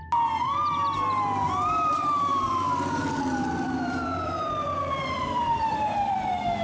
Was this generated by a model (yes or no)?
yes